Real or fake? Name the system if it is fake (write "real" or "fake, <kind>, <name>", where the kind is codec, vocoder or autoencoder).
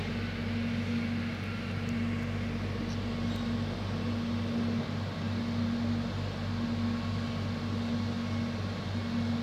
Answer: real